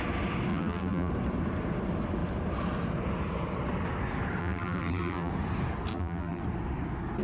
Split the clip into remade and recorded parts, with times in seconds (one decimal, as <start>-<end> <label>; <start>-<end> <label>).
0.0-0.5 recorded; 0.5-1.1 remade; 1.1-4.4 recorded; 4.4-5.3 remade; 5.3-5.9 recorded; 5.9-6.4 remade; 6.4-7.2 recorded